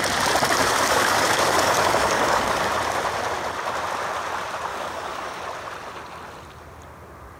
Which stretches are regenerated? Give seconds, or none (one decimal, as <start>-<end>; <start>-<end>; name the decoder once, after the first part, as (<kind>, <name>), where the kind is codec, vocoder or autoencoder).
0.6-2.6 (codec, DAC); 4.7-5.4

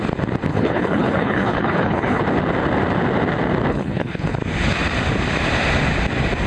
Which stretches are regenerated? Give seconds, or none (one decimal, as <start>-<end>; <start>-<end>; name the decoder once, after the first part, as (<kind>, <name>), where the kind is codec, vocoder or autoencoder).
0.5-2.2 (codec, HILCodec); 3.7-4.4